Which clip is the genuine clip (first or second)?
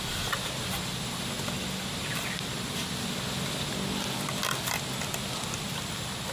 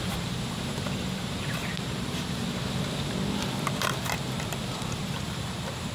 first